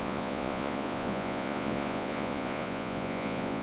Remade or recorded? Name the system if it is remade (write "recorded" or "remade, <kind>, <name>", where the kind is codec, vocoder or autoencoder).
remade, vocoder, Vocos